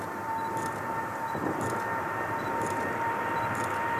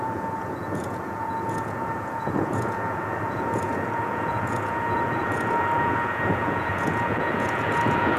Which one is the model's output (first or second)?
second